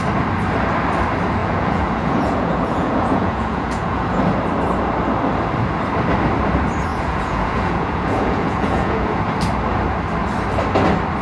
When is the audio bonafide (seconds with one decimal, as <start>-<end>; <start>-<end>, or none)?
0.0-1.4; 4.2-6.9; 9.2-11.2